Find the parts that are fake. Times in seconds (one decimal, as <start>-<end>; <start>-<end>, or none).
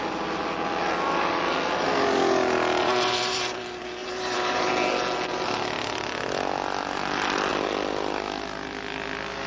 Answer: 2.8-3.6; 4.0-4.7